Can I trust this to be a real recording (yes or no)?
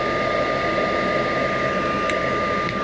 yes